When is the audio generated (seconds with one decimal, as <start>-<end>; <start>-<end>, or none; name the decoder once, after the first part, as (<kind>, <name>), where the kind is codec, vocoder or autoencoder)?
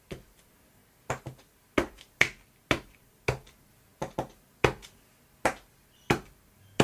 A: none